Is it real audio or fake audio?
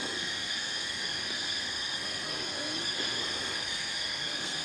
fake